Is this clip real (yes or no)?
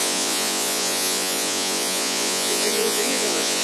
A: no